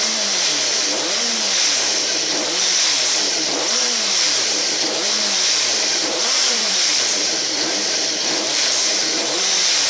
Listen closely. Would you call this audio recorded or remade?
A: remade